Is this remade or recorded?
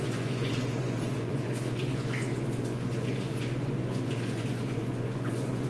remade